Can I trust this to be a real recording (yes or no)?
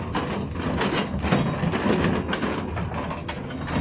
yes